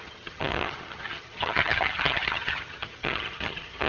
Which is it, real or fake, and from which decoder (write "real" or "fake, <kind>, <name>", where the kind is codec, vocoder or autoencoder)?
fake, vocoder, HiFi-GAN